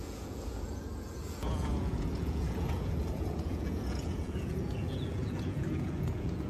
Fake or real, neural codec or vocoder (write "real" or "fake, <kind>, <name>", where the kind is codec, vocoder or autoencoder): fake, vocoder, Vocos